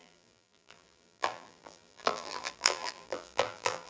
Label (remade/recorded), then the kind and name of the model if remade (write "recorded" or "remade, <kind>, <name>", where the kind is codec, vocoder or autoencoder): remade, vocoder, BigVGAN v2